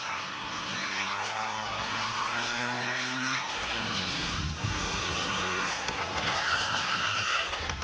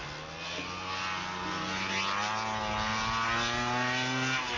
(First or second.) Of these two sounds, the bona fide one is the second